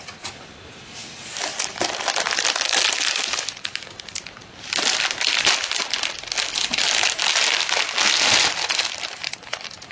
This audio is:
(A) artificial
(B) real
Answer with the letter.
B